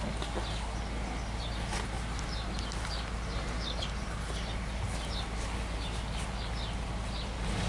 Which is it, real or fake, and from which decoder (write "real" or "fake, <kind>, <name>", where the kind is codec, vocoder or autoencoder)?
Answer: real